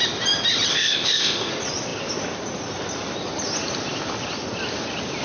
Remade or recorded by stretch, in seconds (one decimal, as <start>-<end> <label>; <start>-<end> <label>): 0.0-0.7 recorded; 0.7-1.5 remade; 1.5-5.2 recorded